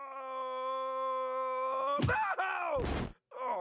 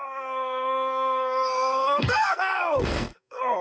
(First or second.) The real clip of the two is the first